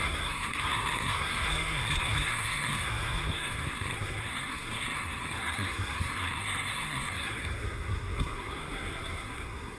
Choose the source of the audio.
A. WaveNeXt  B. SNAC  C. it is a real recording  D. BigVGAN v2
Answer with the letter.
B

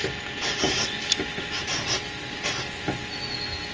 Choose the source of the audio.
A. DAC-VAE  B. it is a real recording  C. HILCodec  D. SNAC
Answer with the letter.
B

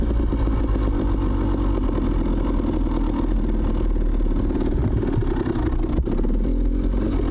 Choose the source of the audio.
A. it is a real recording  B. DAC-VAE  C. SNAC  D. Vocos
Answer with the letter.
A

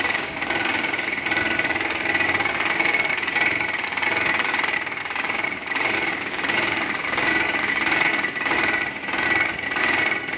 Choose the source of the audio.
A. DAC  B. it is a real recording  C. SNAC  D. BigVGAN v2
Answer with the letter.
A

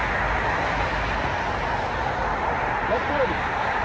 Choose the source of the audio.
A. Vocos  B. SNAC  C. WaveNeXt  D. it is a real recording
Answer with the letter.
D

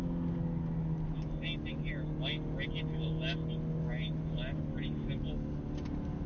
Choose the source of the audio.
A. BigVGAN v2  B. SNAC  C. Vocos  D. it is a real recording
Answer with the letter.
D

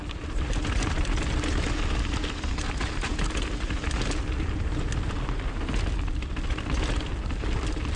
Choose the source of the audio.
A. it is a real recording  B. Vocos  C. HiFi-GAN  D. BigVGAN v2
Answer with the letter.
A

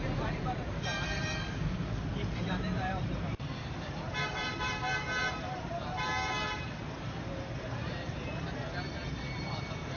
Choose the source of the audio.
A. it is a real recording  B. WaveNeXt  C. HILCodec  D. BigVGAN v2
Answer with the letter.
D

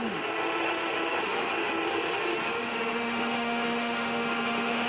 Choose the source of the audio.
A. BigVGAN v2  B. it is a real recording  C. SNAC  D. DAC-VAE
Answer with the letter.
D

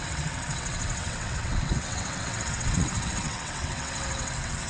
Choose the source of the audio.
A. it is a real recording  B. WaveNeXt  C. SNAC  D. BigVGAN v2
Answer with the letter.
B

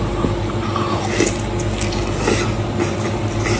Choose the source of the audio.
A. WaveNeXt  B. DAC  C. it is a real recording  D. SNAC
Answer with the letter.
C